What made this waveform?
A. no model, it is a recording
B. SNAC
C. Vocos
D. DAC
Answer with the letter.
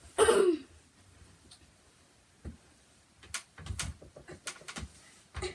A